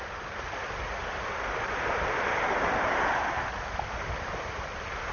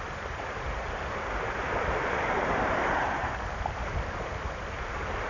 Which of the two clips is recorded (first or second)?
first